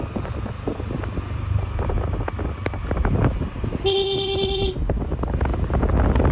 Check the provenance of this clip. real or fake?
real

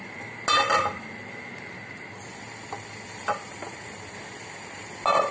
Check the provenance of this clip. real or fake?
real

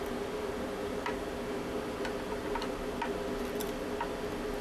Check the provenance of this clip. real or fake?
real